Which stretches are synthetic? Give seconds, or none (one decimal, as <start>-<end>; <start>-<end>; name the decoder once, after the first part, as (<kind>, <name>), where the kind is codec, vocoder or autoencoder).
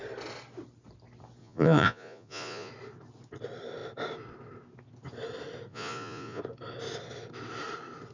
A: 1.4-2.7 (vocoder, Vocos); 5.7-6.4